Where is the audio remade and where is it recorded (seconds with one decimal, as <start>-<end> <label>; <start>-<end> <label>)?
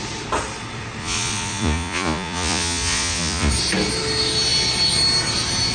0.0-1.0 recorded; 1.0-3.5 remade; 3.5-5.7 recorded